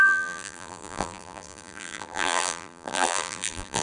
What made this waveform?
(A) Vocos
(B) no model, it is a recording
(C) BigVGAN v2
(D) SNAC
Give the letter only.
C